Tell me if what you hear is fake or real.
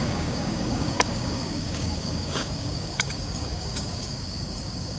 fake